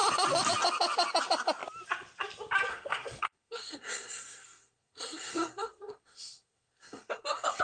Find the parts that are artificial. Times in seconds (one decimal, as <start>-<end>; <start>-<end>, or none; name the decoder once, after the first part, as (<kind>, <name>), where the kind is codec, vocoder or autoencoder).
2.7-7.6 (codec, SNAC)